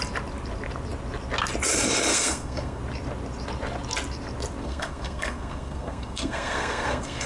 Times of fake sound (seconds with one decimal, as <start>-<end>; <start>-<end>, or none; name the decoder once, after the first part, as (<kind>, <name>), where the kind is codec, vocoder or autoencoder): 2.1-2.8 (codec, SNAC); 4.6-7.3